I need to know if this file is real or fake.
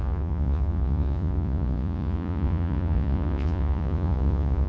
fake